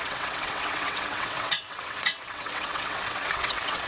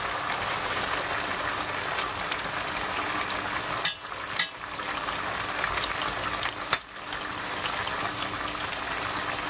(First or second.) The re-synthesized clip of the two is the first